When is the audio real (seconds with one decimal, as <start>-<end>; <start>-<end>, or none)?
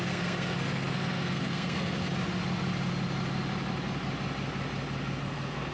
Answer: 2.1-5.2